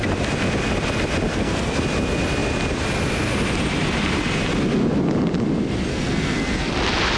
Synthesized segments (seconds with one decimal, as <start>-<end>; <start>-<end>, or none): 1.3-1.8; 5.9-6.7